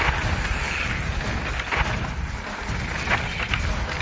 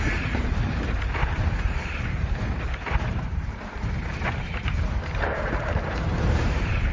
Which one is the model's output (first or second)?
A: second